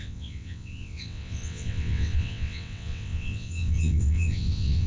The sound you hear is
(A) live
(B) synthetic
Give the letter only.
B